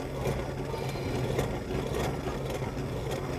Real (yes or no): yes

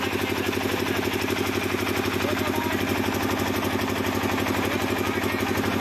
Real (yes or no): yes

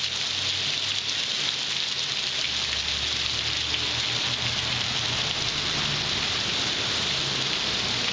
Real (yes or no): yes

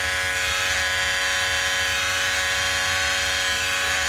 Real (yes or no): yes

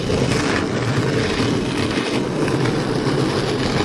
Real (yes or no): yes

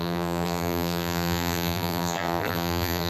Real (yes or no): no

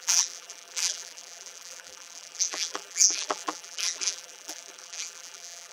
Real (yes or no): no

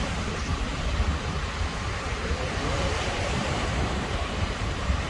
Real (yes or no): no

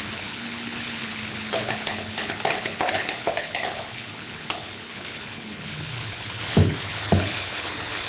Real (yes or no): no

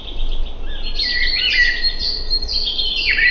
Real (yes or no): yes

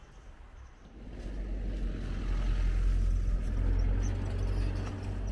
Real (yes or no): yes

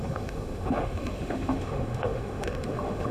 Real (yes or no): no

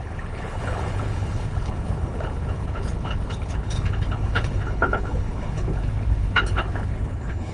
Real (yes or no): no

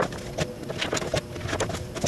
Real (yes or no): yes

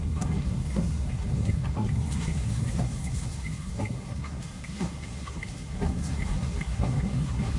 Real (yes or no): no